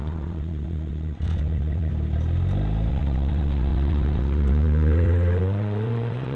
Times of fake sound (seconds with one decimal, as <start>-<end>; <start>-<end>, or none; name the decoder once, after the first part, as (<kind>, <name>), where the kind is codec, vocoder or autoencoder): 0.0-1.9 (vocoder, WaveNeXt); 2.9-6.4